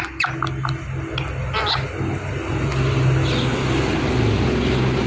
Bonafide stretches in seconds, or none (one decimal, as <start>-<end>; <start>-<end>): 0.0-5.1